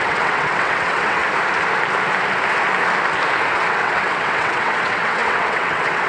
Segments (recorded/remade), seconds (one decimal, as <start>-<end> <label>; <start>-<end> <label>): 0.0-1.2 remade; 1.2-3.5 recorded; 3.5-6.1 remade